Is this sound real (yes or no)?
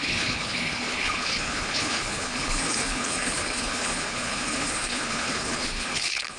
no